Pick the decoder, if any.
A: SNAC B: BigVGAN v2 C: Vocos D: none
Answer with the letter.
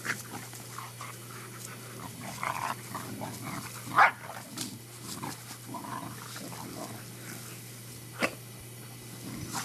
D